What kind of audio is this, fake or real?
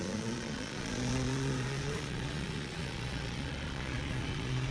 fake